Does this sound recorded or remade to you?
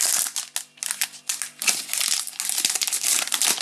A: recorded